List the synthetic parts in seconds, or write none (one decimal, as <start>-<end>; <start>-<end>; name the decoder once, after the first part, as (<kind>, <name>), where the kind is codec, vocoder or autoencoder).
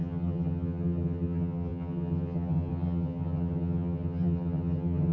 0.0-5.1 (vocoder, HiFi-GAN)